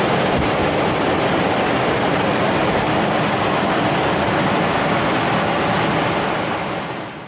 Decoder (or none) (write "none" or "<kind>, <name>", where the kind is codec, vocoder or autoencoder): none